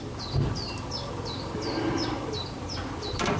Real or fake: real